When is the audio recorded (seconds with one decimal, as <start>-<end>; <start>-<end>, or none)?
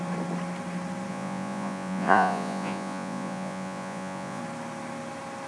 0.0-1.1; 4.4-5.5